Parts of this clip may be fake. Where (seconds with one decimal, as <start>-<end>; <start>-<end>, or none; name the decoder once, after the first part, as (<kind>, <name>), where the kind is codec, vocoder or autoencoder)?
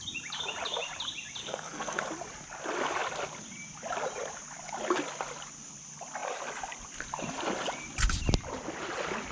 1.4-2.0 (codec, SNAC)